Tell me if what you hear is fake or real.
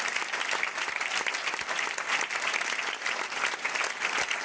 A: real